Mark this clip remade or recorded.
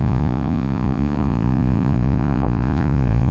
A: remade